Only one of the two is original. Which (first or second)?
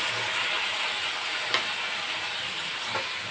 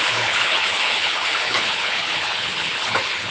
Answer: first